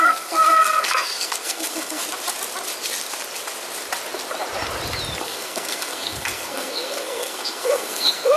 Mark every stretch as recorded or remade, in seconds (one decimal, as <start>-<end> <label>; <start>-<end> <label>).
0.0-2.0 remade; 2.0-5.2 recorded; 5.2-8.4 remade

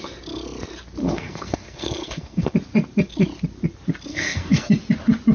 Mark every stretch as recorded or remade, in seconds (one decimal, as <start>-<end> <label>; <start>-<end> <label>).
0.0-1.0 recorded; 1.0-2.5 remade; 2.5-4.1 recorded; 4.1-4.7 remade; 4.7-5.3 recorded

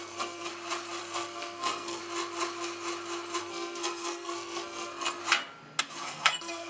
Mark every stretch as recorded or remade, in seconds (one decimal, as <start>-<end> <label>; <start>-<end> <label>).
0.0-0.5 remade; 0.5-1.0 recorded; 1.0-2.0 remade; 2.0-3.4 recorded; 3.4-5.2 remade; 5.2-5.8 recorded; 5.8-6.7 remade

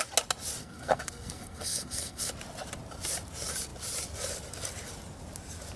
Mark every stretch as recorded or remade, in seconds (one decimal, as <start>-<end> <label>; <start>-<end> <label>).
0.0-0.6 recorded; 0.6-2.3 remade; 2.3-5.8 recorded

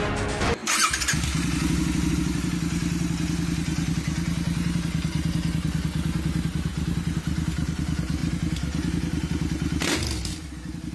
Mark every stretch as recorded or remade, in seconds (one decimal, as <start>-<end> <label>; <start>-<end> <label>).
0.0-10.9 recorded

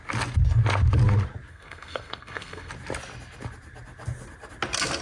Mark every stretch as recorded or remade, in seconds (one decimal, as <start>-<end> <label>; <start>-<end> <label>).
0.0-1.5 recorded; 1.5-2.7 remade; 2.7-5.0 recorded

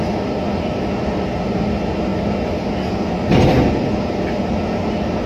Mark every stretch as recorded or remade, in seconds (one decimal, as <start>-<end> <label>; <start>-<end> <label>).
0.0-5.3 recorded

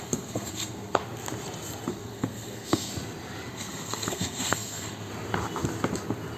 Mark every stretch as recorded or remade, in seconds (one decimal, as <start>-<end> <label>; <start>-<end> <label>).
0.0-1.0 remade; 1.0-1.9 recorded; 1.9-2.9 remade; 2.9-3.5 recorded; 3.5-5.1 remade; 5.1-6.4 recorded